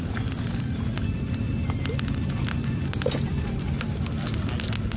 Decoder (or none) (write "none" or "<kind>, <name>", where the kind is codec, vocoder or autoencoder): none